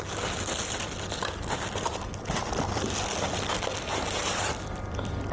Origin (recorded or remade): recorded